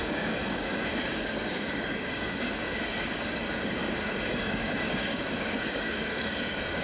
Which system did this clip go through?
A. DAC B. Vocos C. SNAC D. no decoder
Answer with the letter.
A